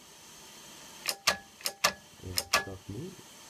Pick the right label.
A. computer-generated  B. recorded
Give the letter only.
B